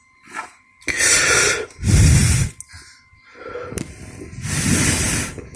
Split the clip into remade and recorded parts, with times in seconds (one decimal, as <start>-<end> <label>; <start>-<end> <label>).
0.0-5.6 recorded